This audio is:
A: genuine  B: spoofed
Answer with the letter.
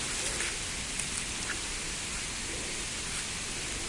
A